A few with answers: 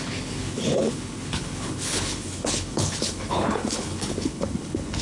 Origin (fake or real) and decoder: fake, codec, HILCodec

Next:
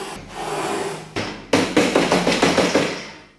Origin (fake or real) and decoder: real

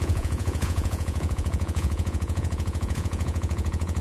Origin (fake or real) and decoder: fake, vocoder, Vocos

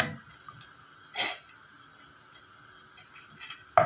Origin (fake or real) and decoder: real